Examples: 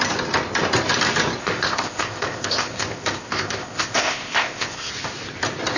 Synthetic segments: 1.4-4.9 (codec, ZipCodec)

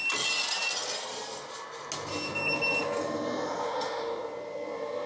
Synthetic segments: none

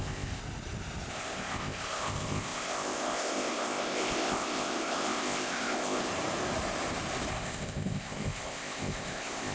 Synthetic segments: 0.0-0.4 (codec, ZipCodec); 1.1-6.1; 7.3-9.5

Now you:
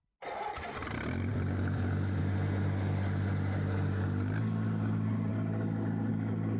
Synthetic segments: none